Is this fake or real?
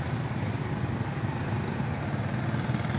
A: real